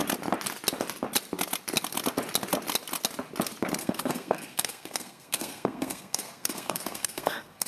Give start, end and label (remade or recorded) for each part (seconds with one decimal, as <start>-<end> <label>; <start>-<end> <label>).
0.0-3.8 recorded; 3.8-7.7 remade